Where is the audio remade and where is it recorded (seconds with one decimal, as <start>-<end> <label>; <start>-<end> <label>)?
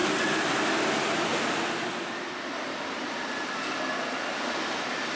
0.0-5.2 recorded